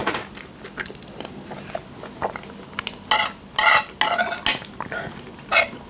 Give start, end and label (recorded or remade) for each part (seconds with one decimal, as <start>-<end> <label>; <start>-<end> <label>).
0.0-5.9 recorded